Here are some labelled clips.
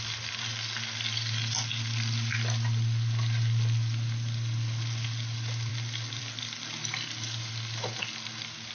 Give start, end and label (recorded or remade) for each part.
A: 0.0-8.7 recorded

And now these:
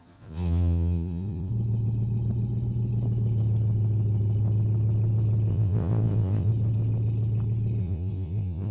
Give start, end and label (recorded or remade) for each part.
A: 0.0-1.5 remade; 1.5-5.5 recorded; 5.5-6.5 remade; 6.5-7.8 recorded; 7.8-8.7 remade

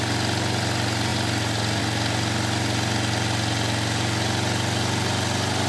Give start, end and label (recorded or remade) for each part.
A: 0.0-5.7 recorded

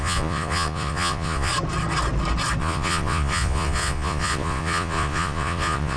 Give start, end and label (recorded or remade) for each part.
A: 0.0-1.5 remade; 1.5-2.6 recorded; 2.6-6.0 remade

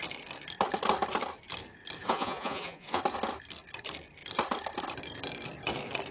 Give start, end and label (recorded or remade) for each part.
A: 0.0-2.0 recorded; 2.0-3.0 remade; 3.0-6.1 recorded